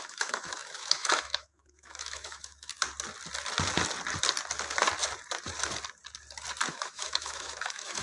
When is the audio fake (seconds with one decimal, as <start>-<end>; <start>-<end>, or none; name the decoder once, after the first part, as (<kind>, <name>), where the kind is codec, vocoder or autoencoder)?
0.0-2.7 (autoencoder, DAC-VAE); 6.7-8.0